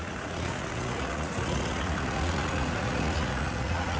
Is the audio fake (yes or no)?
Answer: yes